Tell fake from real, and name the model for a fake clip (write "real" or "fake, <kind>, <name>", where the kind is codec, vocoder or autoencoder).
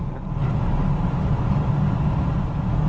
real